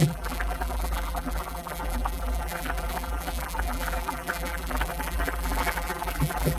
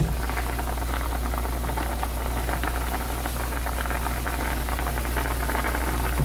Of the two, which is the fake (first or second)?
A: first